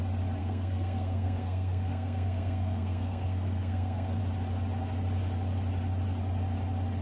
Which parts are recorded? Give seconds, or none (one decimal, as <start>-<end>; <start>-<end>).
0.0-0.4; 4.2-7.0